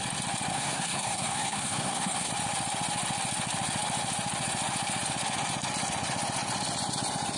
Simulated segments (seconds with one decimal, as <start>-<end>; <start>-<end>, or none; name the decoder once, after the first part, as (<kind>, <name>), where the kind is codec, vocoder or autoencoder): 0.5-2.3 (codec, SNAC)